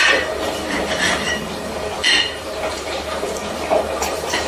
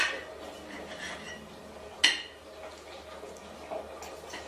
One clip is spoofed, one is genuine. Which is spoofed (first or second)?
first